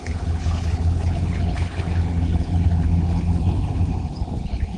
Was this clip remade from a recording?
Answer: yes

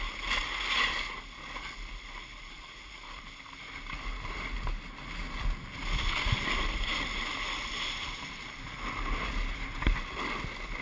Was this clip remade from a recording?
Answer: no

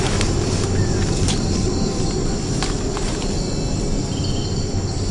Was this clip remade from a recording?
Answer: no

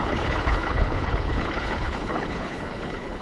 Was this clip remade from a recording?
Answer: yes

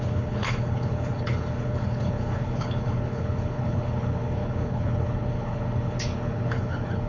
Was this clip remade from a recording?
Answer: yes